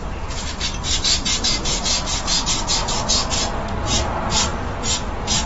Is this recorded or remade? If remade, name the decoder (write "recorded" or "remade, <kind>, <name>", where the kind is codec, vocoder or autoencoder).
recorded